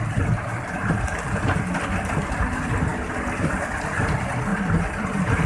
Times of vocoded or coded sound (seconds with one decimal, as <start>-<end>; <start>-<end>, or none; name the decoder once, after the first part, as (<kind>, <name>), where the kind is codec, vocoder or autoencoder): 0.0-2.9 (vocoder, BigVGAN v2); 3.4-4.5